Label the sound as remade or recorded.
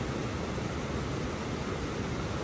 recorded